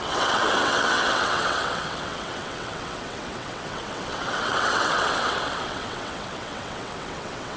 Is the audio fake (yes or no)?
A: yes